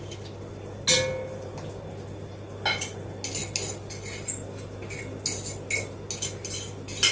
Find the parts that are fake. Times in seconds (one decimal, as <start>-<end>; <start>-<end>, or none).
none